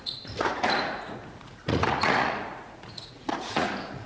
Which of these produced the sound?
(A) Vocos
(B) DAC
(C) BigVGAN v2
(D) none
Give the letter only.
A